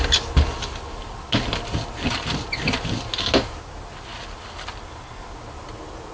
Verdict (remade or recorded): recorded